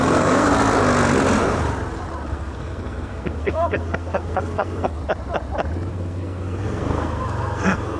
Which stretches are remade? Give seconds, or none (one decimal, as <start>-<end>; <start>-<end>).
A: 0.0-0.5; 2.3-5.0; 5.9-8.0